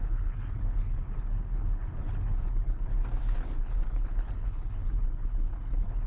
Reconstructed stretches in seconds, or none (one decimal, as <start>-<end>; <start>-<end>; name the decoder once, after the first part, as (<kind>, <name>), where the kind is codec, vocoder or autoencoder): 0.0-2.9 (codec, HILCodec); 3.4-6.1